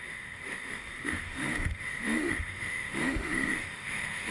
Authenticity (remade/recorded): remade